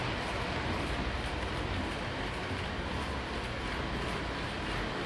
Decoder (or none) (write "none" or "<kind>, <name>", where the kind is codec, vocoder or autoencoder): none